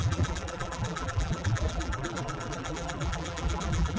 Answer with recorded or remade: remade